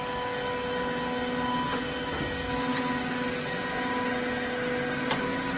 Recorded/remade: recorded